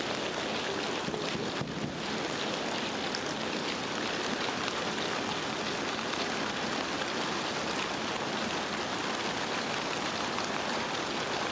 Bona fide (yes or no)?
yes